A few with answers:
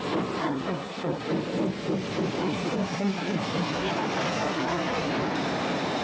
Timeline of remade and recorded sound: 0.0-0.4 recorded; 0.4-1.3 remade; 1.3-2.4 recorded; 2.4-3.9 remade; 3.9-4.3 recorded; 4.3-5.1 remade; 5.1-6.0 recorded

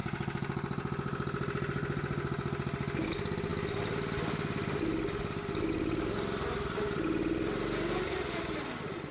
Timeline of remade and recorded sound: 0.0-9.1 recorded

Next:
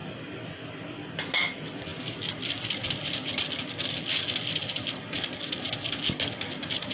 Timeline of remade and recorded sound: 0.0-6.9 recorded

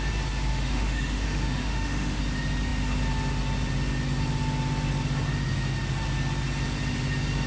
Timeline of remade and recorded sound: 0.0-0.5 recorded; 0.5-2.2 remade; 2.2-7.5 recorded

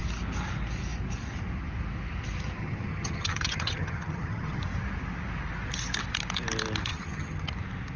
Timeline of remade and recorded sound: 0.0-2.6 recorded; 2.6-4.6 remade; 4.6-6.9 recorded; 6.9-7.5 remade; 7.5-8.0 recorded